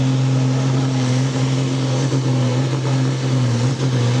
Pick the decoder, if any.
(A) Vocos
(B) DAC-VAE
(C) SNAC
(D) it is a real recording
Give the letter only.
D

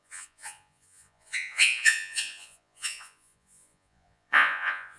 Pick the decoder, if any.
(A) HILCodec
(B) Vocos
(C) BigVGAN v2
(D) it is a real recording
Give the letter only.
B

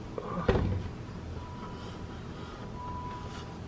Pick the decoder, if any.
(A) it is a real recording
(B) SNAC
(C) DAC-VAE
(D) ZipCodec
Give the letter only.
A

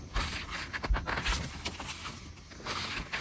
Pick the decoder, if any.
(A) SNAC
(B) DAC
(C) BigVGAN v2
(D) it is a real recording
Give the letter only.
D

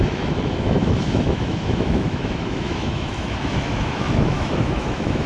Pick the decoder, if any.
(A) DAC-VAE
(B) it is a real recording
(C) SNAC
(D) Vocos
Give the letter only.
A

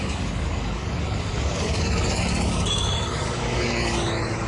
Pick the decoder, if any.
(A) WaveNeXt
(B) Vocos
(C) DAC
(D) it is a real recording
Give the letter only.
C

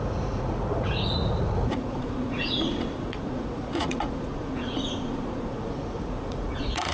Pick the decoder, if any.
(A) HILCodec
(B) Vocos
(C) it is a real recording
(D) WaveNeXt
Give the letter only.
B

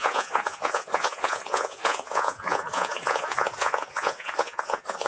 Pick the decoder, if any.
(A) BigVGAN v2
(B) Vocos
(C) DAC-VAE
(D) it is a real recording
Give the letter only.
B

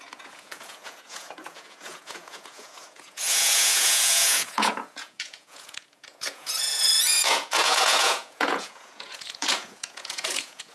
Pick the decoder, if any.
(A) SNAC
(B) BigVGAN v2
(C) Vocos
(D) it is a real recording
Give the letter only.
C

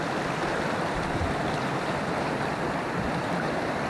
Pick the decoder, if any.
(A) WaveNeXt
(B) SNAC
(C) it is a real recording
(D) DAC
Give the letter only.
C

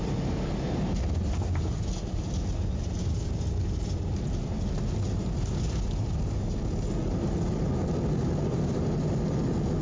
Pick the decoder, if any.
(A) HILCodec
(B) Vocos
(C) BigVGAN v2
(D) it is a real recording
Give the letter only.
D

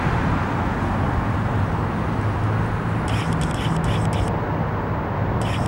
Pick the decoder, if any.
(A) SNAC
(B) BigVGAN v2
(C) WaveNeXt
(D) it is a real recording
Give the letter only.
D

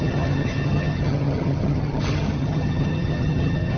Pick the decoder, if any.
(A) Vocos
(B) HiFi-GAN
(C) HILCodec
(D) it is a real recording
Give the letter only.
B